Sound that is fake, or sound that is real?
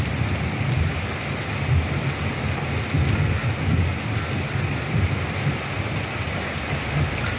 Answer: real